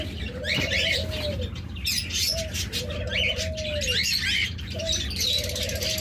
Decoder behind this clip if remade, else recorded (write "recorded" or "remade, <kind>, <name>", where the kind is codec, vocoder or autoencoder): recorded